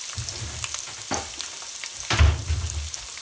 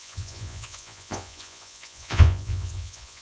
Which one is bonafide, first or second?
first